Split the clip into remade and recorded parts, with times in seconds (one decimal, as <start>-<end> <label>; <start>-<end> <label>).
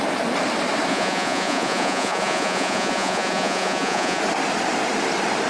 0.0-0.9 recorded; 0.9-4.2 remade; 4.2-5.5 recorded